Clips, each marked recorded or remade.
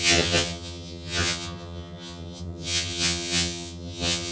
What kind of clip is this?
remade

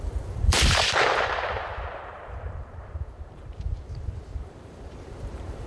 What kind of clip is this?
remade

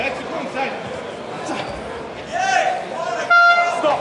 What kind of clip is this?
recorded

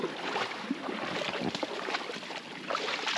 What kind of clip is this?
recorded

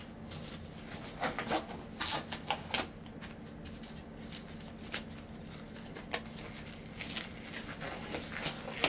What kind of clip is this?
recorded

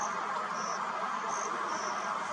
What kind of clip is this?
recorded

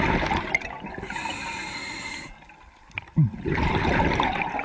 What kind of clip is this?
recorded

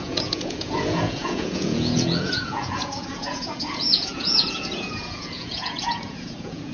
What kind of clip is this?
remade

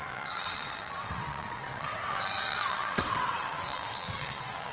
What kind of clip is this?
remade